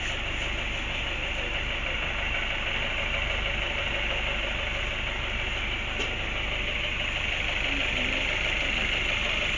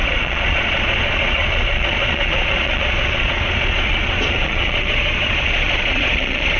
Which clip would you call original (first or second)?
first